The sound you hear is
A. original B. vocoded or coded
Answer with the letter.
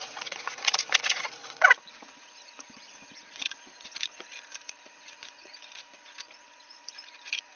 B